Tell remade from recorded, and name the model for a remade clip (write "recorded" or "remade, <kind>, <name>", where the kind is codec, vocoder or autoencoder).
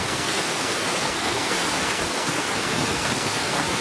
remade, codec, SNAC